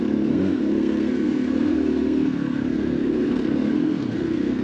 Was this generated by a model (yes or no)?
yes